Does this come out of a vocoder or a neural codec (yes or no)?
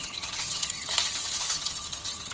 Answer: yes